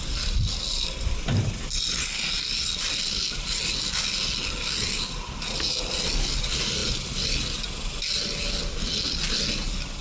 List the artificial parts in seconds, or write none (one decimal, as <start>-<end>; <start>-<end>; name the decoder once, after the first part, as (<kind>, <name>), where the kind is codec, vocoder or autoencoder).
none